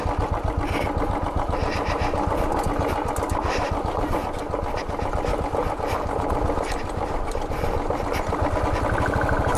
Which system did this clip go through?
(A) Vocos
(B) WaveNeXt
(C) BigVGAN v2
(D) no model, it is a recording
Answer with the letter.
D